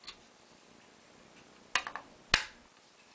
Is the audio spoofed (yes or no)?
no